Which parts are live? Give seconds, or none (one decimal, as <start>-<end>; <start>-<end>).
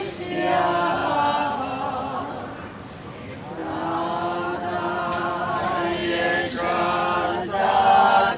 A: 0.0-8.4